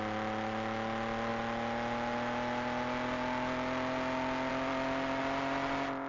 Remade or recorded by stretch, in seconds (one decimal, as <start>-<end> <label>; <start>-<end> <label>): 0.0-6.1 recorded